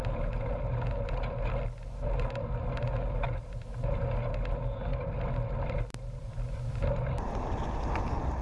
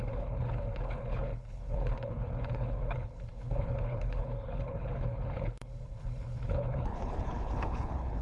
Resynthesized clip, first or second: second